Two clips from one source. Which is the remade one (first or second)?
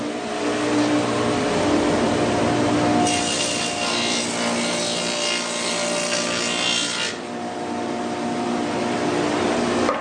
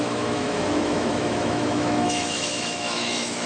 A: second